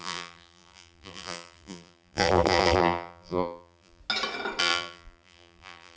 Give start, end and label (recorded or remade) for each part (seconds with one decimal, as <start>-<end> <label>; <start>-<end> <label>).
0.0-4.0 remade; 4.0-4.6 recorded; 4.6-6.0 remade